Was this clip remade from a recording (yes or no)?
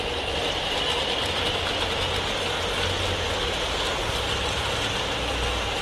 no